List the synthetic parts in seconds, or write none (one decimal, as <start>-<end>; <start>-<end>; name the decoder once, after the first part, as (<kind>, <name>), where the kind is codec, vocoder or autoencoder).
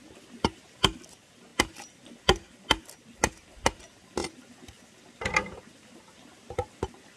none